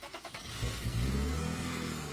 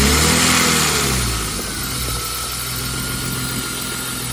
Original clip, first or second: second